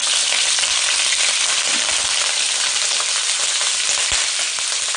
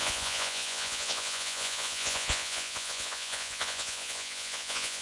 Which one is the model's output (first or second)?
second